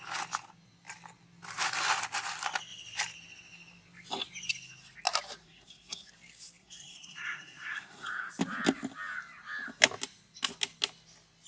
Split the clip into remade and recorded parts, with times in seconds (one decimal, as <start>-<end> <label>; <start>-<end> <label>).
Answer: 0.0-5.4 recorded; 5.4-6.1 remade; 6.1-6.6 recorded; 6.6-8.3 remade; 8.3-11.5 recorded